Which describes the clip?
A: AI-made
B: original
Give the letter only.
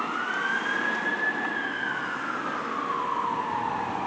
B